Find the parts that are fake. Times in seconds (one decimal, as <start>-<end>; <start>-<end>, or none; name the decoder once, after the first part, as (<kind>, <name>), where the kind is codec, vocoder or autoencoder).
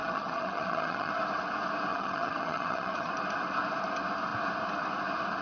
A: 0.0-1.1 (vocoder, HiFi-GAN); 1.9-3.1